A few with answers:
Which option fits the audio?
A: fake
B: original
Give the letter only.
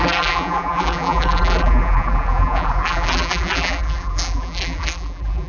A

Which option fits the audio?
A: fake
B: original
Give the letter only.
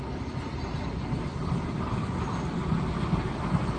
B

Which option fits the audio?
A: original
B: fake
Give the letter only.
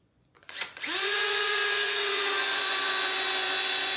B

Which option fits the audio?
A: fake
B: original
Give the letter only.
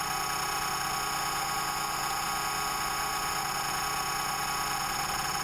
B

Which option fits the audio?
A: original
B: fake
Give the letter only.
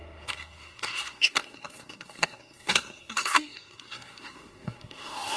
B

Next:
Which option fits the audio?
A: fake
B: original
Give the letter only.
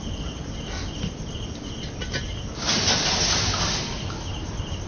B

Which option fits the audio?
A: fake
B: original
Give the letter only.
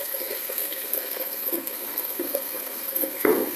A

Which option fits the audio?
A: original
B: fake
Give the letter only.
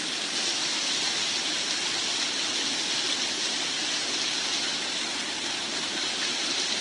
A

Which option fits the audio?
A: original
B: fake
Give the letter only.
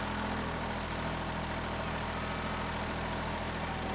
A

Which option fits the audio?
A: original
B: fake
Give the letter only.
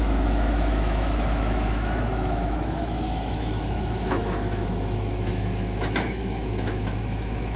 B